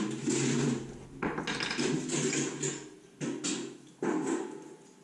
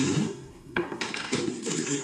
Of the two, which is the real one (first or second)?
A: first